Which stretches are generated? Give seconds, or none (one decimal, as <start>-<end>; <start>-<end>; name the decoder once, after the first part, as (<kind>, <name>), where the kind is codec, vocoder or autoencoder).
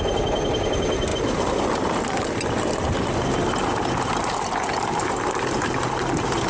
none